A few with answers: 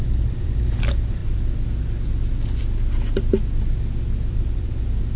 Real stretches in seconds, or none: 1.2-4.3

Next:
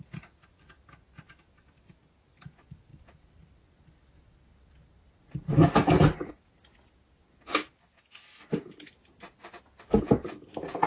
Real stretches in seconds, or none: 0.0-2.9; 6.3-10.9

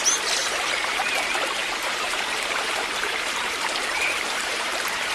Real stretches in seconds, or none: 0.0-0.4; 1.0-1.6

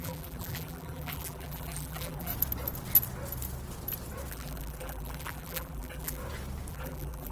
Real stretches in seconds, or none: 2.3-4.3; 6.2-6.7

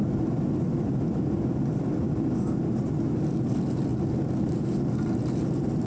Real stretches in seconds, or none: 0.0-5.9

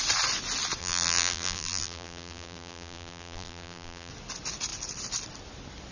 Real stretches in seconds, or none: 0.0-0.8; 4.1-5.9